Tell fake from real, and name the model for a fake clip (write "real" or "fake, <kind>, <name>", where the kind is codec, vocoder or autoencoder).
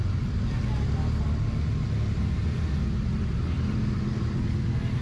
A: real